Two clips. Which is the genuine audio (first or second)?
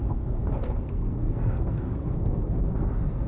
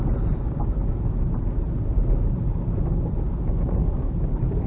second